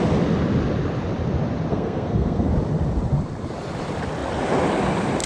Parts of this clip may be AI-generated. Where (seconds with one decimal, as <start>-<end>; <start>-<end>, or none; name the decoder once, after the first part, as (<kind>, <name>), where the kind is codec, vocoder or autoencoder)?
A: 1.7-2.5 (codec, SNAC)